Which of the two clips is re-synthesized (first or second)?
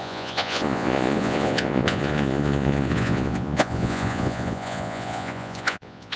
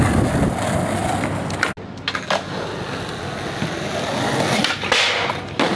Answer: first